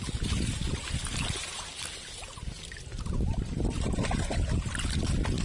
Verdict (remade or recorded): recorded